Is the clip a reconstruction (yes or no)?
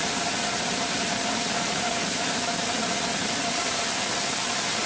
yes